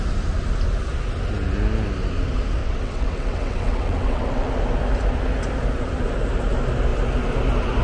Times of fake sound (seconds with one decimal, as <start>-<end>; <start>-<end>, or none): 2.6-4.5